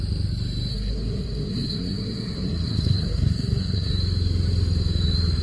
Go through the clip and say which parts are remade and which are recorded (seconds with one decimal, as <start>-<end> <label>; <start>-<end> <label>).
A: 0.0-0.7 recorded; 0.7-3.9 remade; 3.9-5.4 recorded